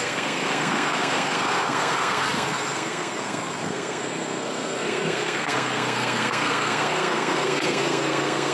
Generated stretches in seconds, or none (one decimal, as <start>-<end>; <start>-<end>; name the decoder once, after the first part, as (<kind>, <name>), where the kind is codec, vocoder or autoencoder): 0.0-8.5 (codec, SNAC)